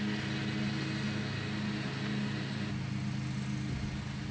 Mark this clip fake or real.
real